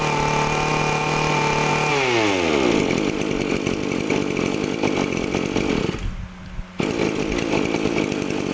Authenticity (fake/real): real